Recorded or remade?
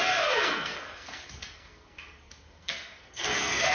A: remade